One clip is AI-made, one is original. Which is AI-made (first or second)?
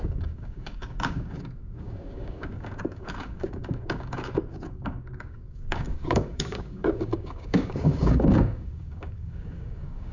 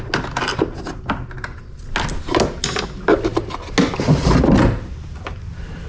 first